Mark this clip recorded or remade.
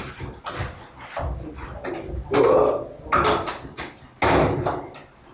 recorded